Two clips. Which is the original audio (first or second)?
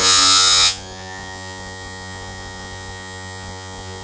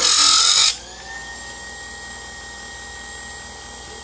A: second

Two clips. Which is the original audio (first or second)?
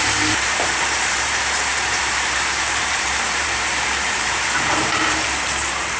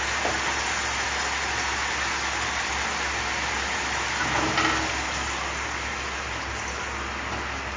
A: second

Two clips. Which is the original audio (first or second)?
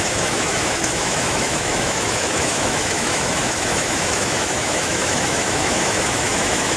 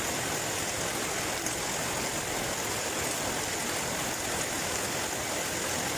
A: second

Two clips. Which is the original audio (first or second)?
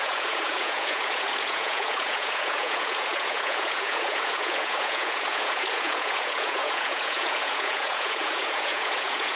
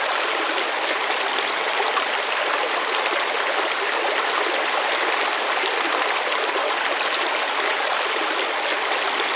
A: second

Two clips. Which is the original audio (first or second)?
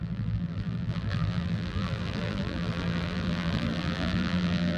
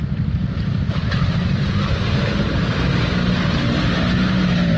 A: second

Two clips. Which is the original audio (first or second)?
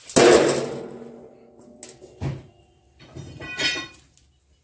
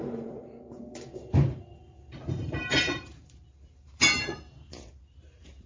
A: first